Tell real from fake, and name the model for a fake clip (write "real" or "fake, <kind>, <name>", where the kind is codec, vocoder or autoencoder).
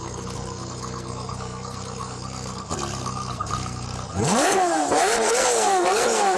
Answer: fake, codec, SNAC